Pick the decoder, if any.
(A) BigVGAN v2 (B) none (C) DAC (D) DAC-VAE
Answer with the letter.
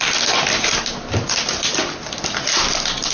B